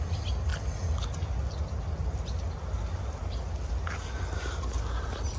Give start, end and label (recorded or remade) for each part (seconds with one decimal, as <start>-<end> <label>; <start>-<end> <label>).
0.0-5.4 recorded